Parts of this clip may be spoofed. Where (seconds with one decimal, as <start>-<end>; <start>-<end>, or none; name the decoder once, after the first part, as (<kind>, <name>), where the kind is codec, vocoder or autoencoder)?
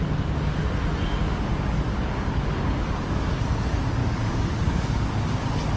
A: 1.5-3.4 (codec, DAC); 4.0-5.8